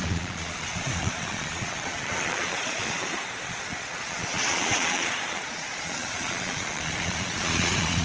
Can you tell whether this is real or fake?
fake